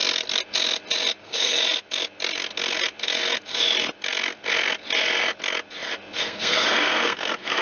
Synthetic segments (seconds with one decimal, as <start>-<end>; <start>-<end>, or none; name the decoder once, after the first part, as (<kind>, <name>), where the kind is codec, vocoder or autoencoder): 1.2-1.6 (codec, SNAC); 6.2-7.6